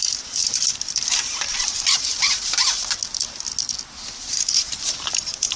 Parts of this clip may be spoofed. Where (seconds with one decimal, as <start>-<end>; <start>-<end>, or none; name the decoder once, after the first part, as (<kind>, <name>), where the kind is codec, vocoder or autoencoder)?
0.0-2.1 (vocoder, BigVGAN v2); 4.3-5.6